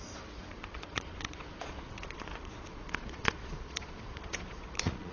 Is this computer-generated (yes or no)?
yes